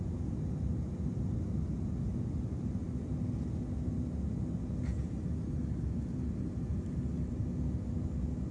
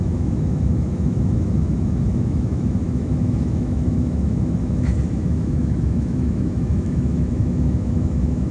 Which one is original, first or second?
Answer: first